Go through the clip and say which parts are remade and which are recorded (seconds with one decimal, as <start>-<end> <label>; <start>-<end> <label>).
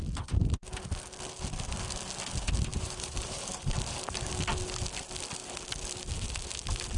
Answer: 0.0-2.7 recorded; 2.7-4.3 remade; 4.3-7.0 recorded